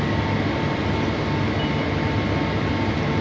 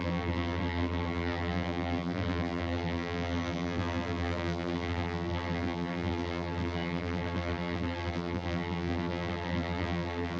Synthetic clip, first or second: second